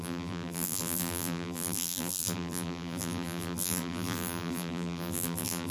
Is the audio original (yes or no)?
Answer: no